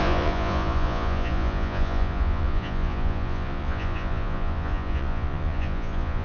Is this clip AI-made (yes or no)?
yes